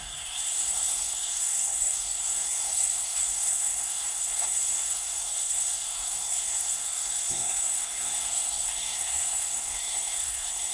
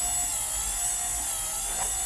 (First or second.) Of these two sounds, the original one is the second